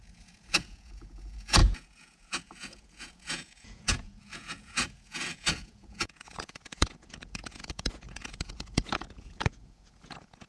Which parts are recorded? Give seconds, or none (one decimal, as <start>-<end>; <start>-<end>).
none